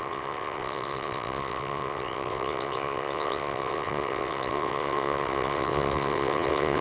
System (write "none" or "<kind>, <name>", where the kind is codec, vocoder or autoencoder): vocoder, WaveNeXt